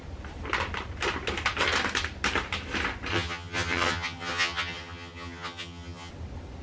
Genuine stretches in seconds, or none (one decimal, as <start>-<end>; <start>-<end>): 0.0-3.1; 6.1-6.6